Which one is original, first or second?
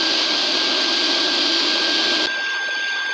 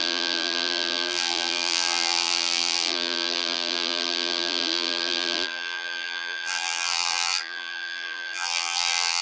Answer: first